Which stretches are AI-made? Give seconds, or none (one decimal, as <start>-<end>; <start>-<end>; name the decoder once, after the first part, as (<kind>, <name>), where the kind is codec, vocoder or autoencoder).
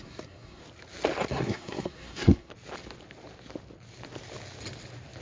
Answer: 0.0-0.6 (codec, SNAC); 1.3-2.5